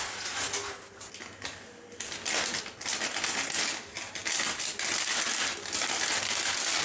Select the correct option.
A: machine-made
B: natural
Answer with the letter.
B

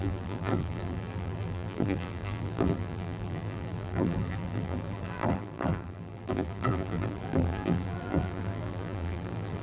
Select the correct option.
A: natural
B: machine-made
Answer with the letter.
B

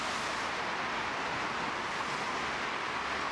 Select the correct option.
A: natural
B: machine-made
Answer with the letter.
A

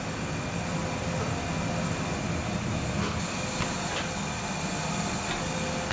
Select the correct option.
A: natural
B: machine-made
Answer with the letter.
A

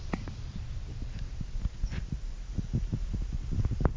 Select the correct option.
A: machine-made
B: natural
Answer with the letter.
A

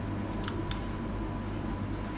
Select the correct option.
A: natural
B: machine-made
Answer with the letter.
A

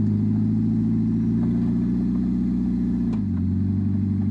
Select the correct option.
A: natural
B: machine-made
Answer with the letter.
A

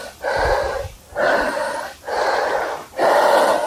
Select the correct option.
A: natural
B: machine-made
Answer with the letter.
B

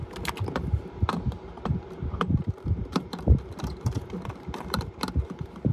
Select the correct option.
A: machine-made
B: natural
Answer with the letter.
A